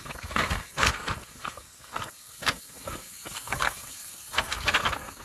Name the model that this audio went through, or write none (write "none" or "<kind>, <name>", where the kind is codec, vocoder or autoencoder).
codec, SNAC